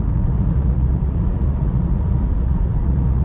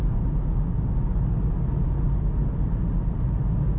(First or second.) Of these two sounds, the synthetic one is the first